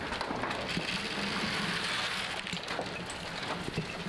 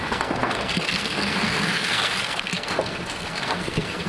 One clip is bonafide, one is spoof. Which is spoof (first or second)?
second